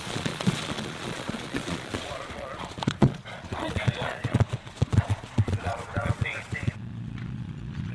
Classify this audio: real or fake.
fake